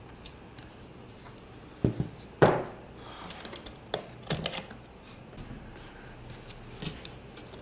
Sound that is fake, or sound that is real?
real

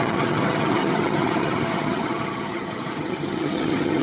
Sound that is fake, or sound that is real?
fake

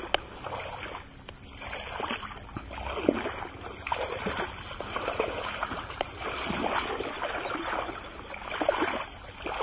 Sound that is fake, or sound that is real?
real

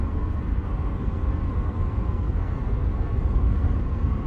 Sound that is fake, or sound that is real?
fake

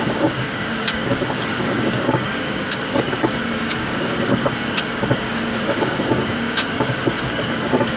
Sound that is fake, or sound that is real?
fake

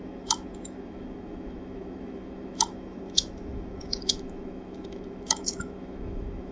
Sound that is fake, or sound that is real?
fake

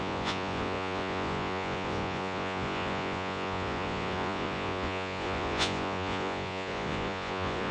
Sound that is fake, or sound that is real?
fake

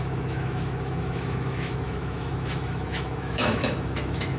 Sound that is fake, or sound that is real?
fake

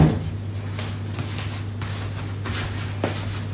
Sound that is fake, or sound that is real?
real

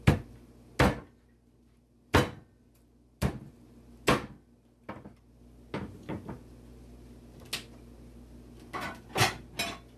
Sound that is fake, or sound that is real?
real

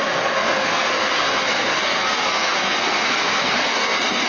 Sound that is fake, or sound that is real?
fake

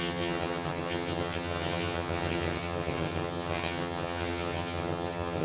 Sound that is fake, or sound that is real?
fake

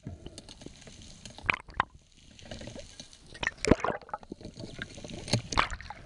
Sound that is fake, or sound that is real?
real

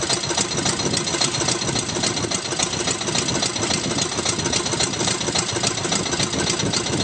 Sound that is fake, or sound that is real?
real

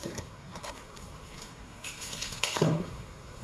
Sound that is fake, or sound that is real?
fake